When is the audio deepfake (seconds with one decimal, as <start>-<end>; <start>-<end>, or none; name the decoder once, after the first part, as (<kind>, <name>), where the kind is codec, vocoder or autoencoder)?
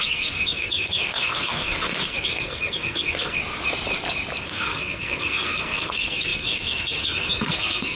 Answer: 0.0-3.4 (codec, SNAC); 4.4-8.0